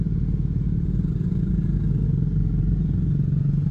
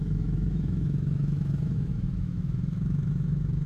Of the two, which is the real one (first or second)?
first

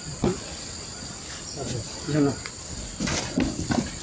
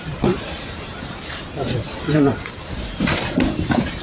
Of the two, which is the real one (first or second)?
first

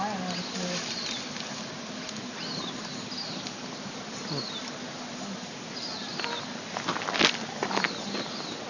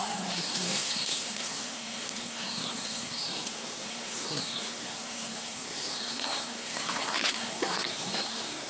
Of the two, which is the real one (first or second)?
first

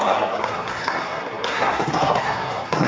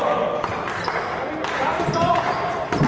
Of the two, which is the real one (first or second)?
second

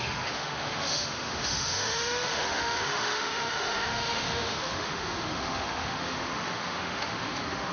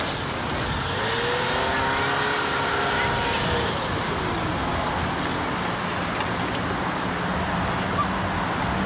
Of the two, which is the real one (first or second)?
second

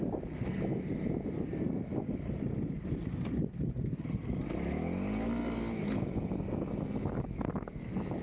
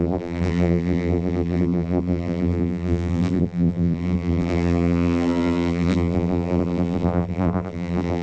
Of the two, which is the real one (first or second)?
first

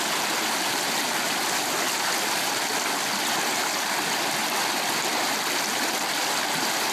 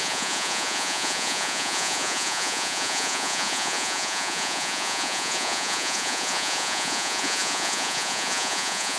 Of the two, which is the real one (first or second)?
first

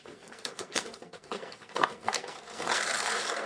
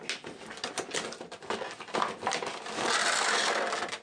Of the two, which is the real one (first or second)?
second